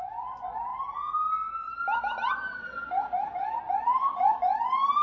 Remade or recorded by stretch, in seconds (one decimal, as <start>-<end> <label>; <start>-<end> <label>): 0.0-5.0 recorded